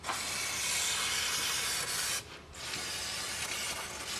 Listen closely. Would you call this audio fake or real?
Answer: real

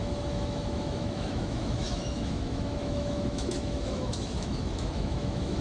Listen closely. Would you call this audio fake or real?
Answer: fake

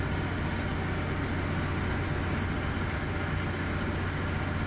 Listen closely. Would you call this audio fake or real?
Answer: real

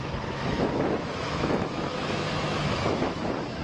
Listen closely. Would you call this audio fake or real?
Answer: fake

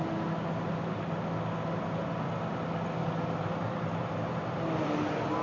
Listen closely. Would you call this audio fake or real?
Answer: real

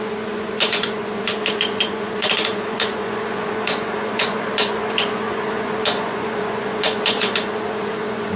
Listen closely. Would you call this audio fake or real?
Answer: fake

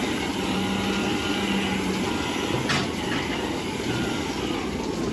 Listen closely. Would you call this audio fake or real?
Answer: real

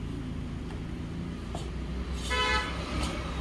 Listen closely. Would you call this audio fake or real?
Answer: real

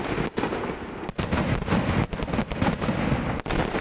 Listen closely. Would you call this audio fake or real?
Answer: real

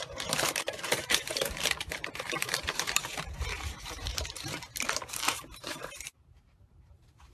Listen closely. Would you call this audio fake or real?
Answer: fake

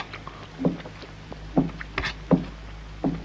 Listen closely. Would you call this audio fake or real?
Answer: real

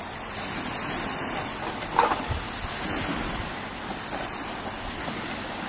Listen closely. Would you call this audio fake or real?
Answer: real